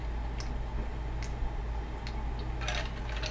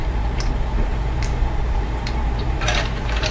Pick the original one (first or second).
first